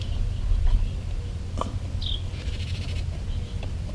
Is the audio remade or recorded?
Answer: remade